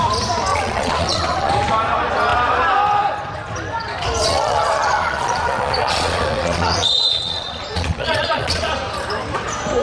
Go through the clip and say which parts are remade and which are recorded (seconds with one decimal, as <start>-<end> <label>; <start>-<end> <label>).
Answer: 0.0-0.5 recorded; 0.5-1.5 remade; 1.5-4.2 recorded; 4.2-8.7 remade; 8.7-9.8 recorded